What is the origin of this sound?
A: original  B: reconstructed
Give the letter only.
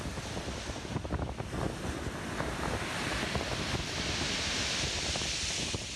A